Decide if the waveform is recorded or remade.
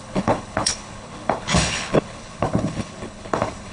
remade